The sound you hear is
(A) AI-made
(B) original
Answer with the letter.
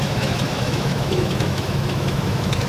A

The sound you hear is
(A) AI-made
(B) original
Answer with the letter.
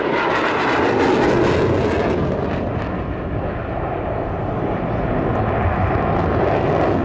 B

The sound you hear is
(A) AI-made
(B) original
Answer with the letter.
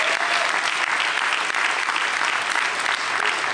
B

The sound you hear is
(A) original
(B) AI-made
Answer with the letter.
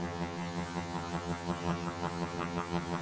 B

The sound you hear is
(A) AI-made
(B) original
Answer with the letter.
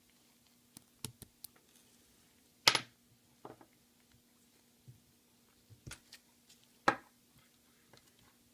B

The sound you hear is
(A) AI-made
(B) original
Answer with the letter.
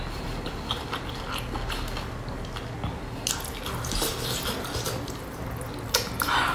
B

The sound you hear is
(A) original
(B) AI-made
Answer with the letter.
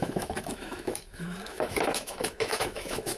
B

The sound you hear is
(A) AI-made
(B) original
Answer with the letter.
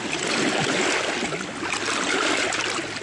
B